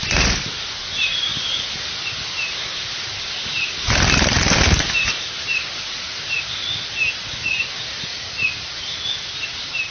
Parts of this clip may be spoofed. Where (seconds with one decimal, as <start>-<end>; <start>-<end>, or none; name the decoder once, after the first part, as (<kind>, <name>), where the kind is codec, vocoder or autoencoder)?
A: none